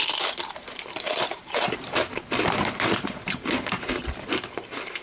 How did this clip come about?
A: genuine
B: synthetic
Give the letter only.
B